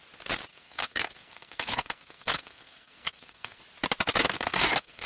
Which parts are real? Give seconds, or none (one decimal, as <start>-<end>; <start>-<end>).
0.0-0.5; 3.6-4.2